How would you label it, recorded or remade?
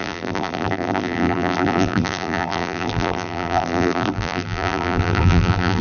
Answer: remade